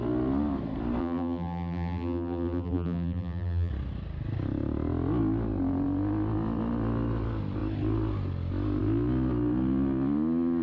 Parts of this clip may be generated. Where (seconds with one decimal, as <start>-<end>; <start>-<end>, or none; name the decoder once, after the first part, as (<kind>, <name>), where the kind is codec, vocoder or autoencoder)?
1.0-3.7 (vocoder, BigVGAN v2)

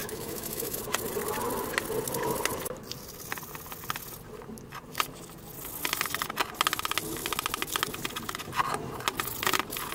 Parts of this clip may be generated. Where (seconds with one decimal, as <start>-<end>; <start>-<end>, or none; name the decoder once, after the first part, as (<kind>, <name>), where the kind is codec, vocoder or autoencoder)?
0.0-0.8 (autoencoder, DAC-VAE)

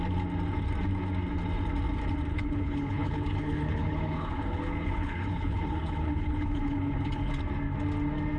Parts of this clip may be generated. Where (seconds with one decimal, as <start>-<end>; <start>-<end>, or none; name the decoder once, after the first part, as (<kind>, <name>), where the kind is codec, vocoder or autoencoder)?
2.3-7.3 (codec, HILCodec)

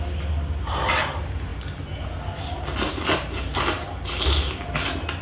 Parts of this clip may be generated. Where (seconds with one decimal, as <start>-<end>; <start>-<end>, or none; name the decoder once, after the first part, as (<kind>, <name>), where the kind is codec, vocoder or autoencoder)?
none